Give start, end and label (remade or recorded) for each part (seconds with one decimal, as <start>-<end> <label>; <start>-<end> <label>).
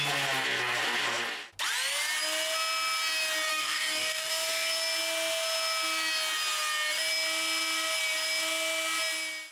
0.0-3.5 recorded; 3.5-4.3 remade; 4.3-9.5 recorded